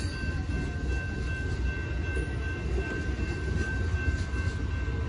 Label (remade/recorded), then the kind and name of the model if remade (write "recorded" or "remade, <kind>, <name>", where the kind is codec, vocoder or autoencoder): recorded